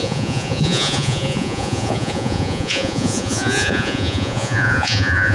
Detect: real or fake fake